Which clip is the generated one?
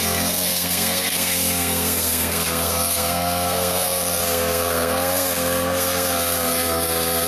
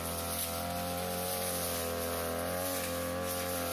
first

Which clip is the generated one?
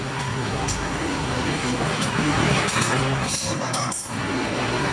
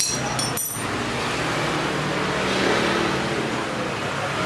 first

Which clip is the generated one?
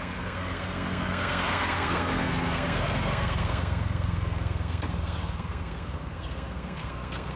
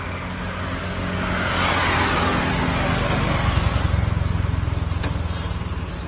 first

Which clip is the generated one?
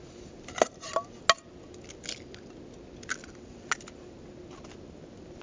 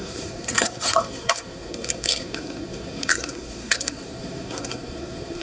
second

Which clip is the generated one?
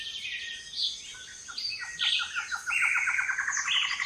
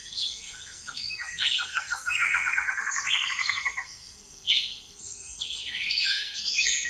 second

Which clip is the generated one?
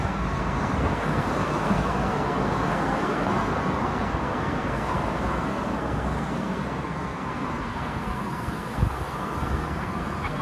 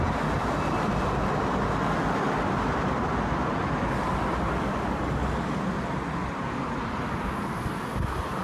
first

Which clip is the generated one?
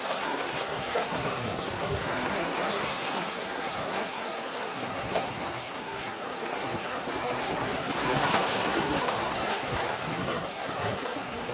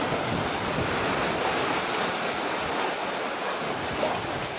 first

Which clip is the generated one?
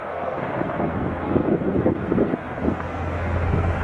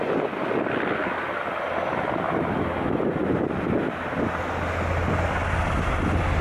first